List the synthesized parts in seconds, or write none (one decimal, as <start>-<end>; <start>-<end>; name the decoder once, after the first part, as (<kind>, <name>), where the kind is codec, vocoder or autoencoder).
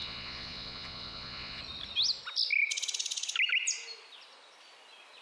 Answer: 0.0-1.6 (vocoder, Vocos)